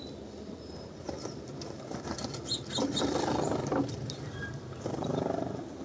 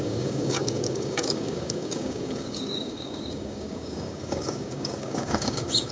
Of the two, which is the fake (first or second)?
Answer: second